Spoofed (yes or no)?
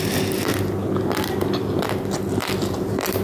no